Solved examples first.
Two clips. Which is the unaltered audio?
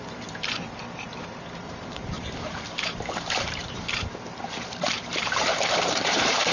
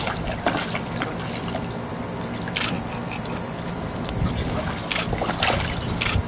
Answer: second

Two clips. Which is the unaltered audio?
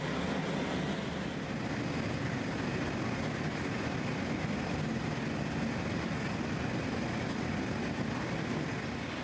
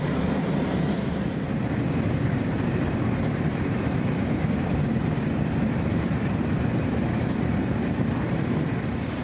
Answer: first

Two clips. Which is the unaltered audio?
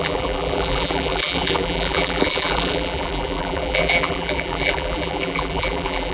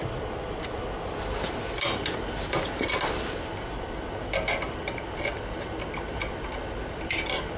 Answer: second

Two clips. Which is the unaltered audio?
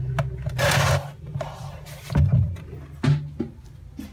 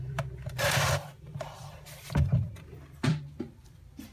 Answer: first